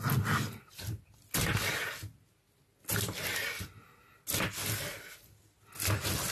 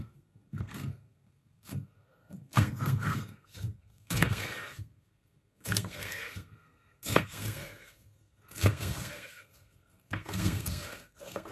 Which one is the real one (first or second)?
first